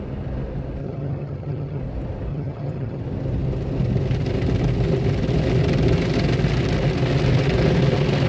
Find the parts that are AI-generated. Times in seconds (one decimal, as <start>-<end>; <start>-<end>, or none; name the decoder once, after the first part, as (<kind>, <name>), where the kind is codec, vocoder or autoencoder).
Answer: 0.8-1.8 (vocoder, HiFi-GAN); 2.3-3.0